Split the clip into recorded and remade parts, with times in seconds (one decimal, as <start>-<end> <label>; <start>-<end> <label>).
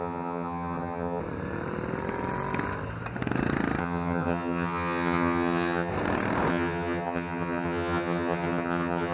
0.0-1.2 remade; 1.2-3.8 recorded; 3.8-5.9 remade; 5.9-6.5 recorded; 6.5-9.1 remade